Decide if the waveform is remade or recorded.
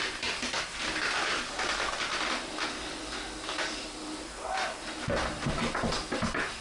recorded